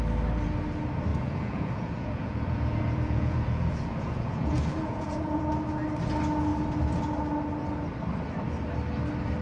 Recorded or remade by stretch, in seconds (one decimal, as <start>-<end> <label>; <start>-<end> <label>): 0.0-1.1 recorded; 1.1-5.4 remade; 5.4-9.4 recorded